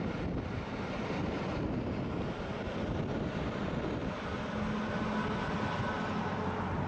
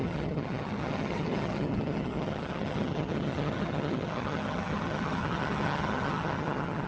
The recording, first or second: first